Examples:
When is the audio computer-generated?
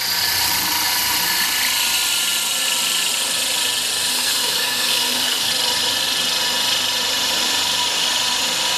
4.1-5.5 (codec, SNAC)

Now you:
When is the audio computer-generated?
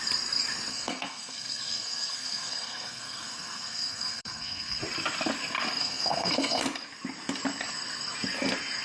0.7-4.8 (codec, SNAC); 5.8-6.6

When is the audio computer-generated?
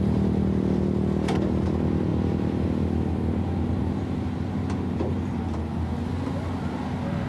none